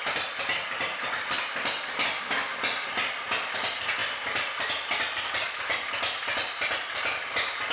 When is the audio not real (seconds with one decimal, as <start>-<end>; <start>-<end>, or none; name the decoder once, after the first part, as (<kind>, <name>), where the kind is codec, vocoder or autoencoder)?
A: none